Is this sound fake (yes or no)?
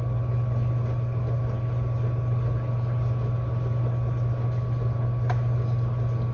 no